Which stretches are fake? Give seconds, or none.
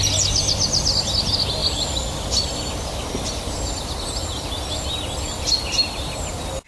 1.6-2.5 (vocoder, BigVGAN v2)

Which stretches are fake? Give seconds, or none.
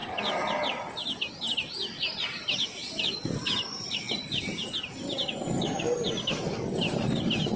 0.0-7.6 (vocoder, BigVGAN v2)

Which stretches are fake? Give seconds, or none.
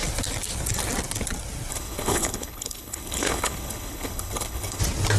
1.7-4.8 (codec, HILCodec)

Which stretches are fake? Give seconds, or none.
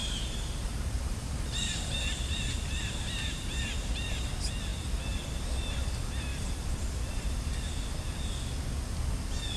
0.0-4.3 (vocoder, BigVGAN v2); 6.3-7.7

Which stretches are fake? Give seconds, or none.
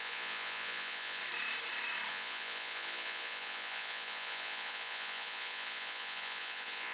0.0-1.2 (vocoder, Vocos); 2.1-6.9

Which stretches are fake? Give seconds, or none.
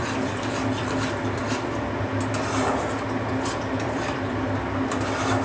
0.0-2.1 (vocoder, BigVGAN v2); 3.3-5.4